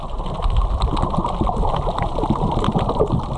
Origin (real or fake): real